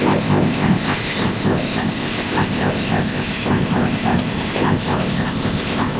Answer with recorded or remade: remade